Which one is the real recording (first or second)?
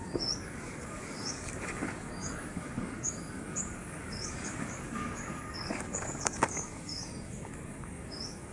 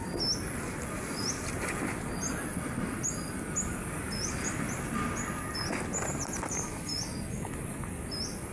second